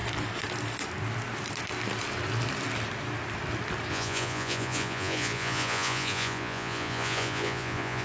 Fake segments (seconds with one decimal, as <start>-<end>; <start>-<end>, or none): 3.9-8.0